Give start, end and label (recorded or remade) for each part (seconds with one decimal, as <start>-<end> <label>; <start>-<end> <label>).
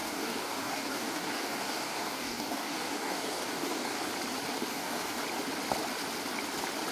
0.0-4.1 remade; 4.1-4.7 recorded; 4.7-5.2 remade; 5.2-6.9 recorded